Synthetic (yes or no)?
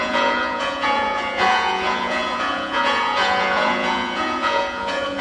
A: yes